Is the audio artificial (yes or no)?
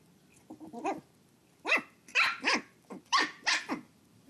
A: yes